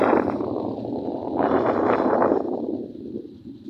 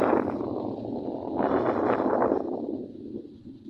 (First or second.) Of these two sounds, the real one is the second